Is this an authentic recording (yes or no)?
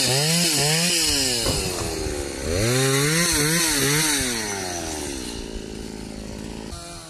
yes